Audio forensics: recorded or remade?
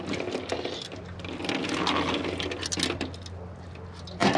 recorded